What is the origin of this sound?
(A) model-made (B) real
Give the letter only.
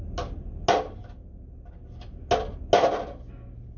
B